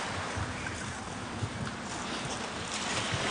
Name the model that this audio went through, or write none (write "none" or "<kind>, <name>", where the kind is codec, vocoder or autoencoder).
none